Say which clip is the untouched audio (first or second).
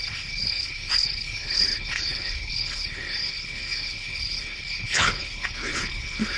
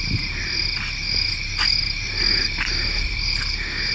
second